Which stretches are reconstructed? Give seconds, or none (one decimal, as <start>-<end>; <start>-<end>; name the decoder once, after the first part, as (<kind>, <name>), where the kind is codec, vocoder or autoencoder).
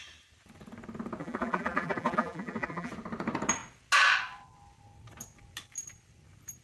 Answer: 1.2-2.9 (vocoder, BigVGAN v2)